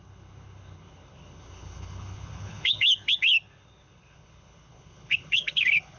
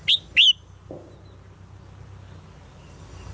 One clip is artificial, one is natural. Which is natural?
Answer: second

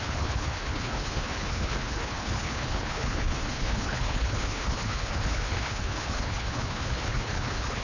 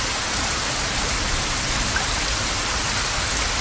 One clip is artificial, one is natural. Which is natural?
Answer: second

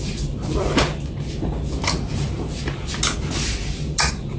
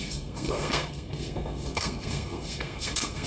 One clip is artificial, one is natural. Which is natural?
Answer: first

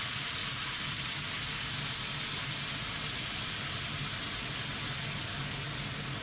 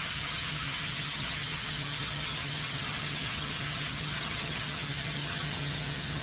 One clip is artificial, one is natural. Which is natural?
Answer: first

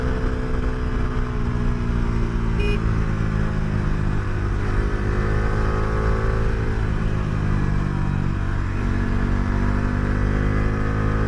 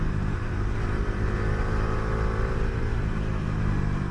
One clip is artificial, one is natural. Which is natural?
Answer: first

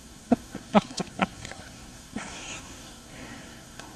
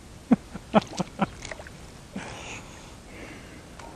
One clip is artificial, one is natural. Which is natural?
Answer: second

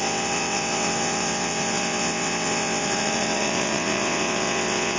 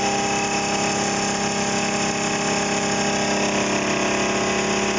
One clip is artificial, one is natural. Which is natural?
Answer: second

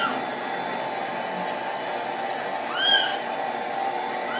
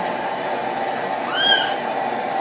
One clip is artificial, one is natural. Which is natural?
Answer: first